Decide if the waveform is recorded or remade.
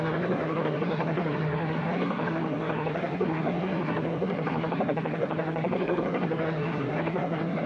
remade